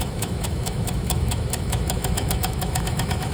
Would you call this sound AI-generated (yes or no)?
yes